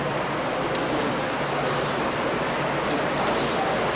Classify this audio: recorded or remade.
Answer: recorded